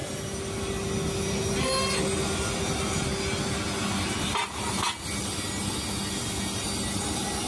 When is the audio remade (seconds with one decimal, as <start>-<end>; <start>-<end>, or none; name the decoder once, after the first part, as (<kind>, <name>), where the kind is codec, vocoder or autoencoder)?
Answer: none